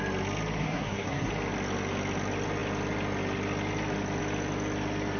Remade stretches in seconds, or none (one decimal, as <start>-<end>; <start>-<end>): 0.6-1.3